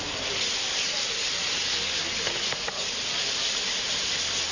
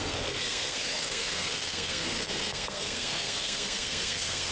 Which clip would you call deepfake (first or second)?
second